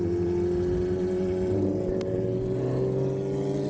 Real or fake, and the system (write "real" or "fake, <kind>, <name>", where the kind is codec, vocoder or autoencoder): real